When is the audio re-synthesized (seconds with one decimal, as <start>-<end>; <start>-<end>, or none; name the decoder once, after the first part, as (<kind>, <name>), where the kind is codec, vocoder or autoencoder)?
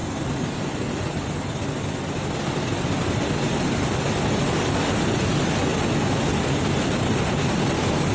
none